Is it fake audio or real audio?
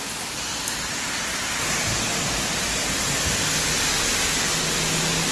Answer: real